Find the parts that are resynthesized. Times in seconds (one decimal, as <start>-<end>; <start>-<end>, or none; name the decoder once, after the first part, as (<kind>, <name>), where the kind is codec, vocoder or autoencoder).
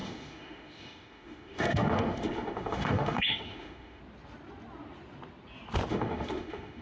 0.0-4.0 (autoencoder, DAC-VAE); 5.9-6.8